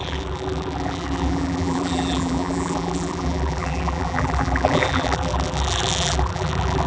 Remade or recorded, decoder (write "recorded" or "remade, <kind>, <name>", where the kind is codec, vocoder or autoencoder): remade, vocoder, BigVGAN v2